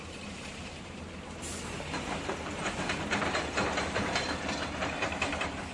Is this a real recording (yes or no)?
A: no